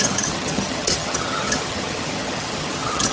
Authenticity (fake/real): fake